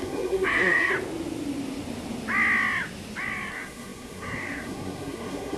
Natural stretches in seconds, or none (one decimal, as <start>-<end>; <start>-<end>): 0.9-3.5